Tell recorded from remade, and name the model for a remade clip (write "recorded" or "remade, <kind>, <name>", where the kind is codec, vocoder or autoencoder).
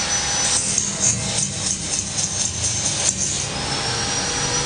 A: recorded